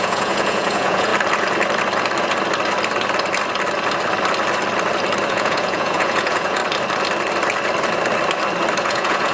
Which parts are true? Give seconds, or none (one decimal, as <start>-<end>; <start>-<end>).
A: 1.1-5.3; 6.6-8.8